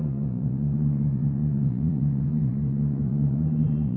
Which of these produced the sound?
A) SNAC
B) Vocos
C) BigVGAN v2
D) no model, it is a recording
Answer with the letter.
B